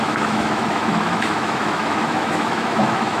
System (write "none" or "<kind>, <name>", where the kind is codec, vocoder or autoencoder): autoencoder, DAC-VAE